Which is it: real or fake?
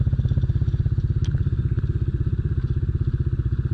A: real